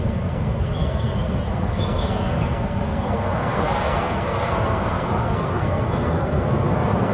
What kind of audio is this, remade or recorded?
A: remade